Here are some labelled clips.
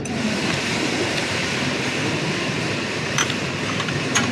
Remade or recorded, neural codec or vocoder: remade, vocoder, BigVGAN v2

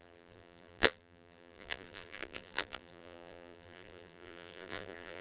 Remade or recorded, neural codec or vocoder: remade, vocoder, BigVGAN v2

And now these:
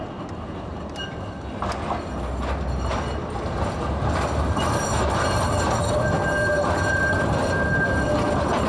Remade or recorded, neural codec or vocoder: recorded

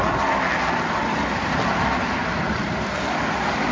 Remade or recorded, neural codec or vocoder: recorded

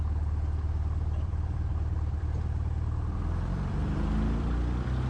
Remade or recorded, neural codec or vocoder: remade, vocoder, BigVGAN v2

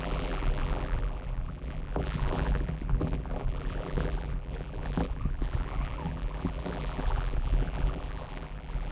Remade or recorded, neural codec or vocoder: remade, vocoder, BigVGAN v2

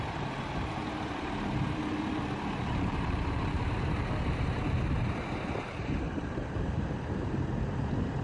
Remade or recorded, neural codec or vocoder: remade, vocoder, BigVGAN v2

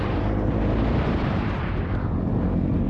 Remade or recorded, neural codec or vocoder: remade, vocoder, BigVGAN v2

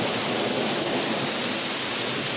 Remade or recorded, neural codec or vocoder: remade, vocoder, BigVGAN v2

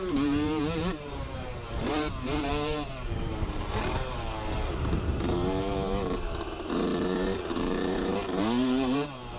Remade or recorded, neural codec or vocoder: remade, vocoder, BigVGAN v2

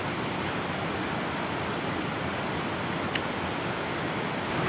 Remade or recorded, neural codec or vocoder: recorded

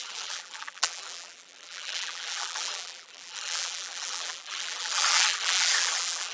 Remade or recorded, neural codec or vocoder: remade, vocoder, BigVGAN v2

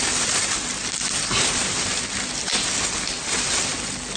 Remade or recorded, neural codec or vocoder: recorded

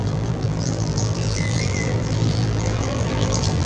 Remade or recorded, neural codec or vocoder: remade, vocoder, BigVGAN v2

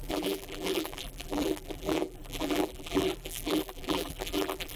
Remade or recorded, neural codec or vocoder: remade, vocoder, BigVGAN v2